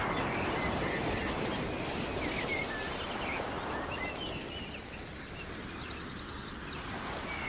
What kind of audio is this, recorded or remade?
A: recorded